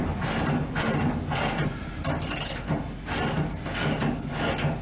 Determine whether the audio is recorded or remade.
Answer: recorded